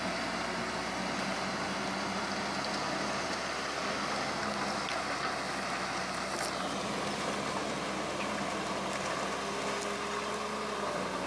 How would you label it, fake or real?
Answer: real